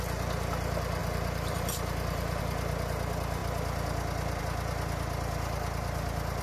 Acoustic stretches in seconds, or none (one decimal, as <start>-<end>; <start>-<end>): 0.0-1.0; 2.4-6.4